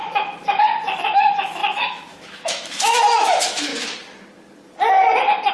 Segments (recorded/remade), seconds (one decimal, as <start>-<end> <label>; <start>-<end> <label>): 0.0-3.7 remade; 3.7-5.5 recorded